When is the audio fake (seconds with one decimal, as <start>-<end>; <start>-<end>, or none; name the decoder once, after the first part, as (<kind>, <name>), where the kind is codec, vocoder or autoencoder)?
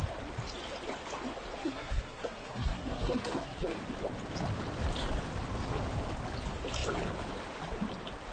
1.6-3.8 (codec, SNAC)